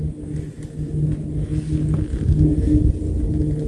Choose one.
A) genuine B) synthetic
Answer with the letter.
A